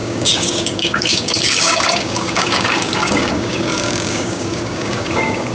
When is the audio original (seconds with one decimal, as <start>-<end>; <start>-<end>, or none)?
none

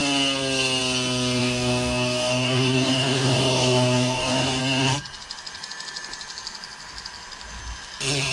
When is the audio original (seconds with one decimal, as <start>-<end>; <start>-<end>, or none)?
0.0-1.4; 4.6-8.3